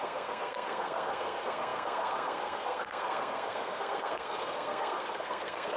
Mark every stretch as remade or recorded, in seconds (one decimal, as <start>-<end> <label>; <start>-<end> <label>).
0.0-5.8 remade